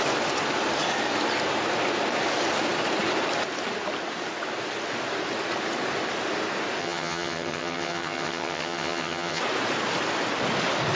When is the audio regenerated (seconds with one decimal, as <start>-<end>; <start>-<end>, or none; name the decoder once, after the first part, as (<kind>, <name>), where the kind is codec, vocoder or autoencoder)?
6.8-9.4 (vocoder, HiFi-GAN)